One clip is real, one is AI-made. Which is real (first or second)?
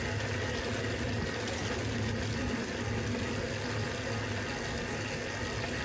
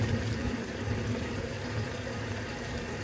first